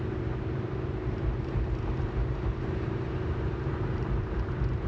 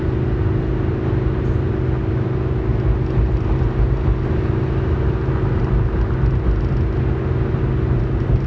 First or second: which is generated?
first